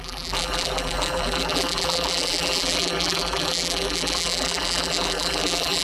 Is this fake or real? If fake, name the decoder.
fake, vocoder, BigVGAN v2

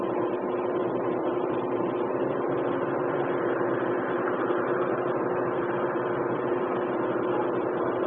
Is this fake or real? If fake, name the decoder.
fake, vocoder, BigVGAN v2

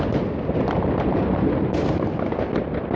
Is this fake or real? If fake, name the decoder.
real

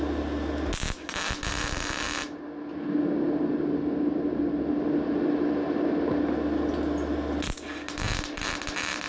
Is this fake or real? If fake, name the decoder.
real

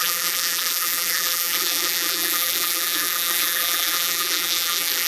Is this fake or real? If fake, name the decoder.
fake, vocoder, BigVGAN v2